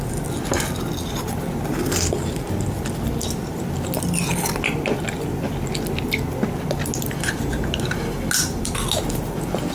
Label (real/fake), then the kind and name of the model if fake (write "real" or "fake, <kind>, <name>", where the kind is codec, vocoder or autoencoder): real